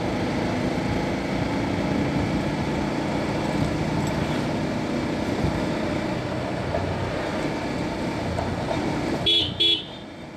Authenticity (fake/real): real